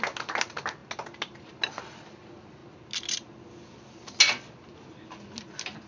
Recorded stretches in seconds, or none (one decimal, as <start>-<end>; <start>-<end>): 0.0-5.9